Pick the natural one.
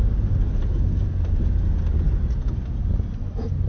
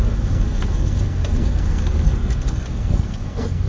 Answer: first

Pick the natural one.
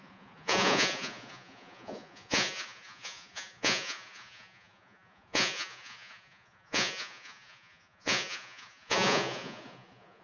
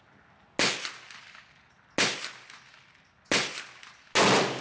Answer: second